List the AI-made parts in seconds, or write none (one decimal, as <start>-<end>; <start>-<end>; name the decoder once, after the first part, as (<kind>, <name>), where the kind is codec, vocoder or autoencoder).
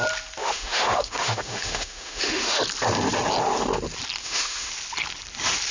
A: 0.4-2.6 (autoencoder, DAC-VAE); 4.2-4.7